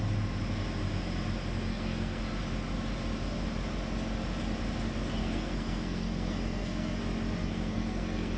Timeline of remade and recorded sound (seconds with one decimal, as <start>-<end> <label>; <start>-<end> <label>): 0.0-1.7 recorded; 1.7-2.2 remade; 2.2-5.2 recorded; 5.2-7.0 remade; 7.0-7.4 recorded; 7.4-8.4 remade